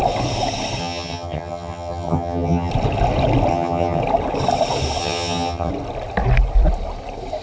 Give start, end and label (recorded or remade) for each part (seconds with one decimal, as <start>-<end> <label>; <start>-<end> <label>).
0.0-0.8 recorded; 0.8-2.7 remade; 2.7-3.5 recorded; 3.5-4.0 remade; 4.0-5.0 recorded; 5.0-5.7 remade; 5.7-7.4 recorded